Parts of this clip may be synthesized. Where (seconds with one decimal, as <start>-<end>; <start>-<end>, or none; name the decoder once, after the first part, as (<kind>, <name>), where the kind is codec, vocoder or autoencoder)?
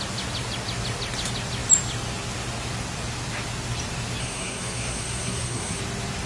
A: 4.2-5.8 (codec, SNAC)